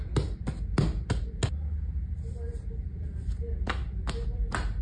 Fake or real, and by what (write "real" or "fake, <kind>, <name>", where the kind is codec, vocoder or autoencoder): real